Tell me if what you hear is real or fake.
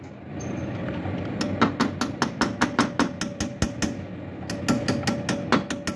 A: real